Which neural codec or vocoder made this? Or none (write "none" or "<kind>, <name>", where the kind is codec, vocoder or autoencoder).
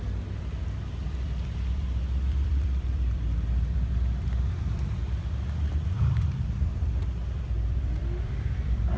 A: vocoder, BigVGAN v2